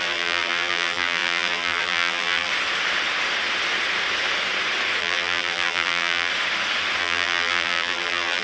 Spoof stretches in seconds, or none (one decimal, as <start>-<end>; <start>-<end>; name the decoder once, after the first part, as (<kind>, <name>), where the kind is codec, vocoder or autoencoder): 0.0-2.5 (vocoder, BigVGAN v2); 5.0-6.3; 7.0-8.4